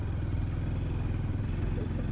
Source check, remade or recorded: recorded